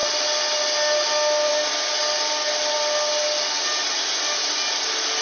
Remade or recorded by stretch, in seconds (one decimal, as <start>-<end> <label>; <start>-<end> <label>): 0.0-5.2 recorded